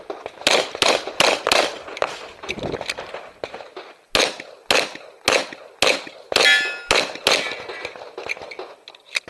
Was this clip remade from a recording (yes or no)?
no